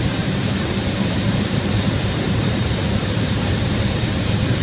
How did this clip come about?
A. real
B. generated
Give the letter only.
B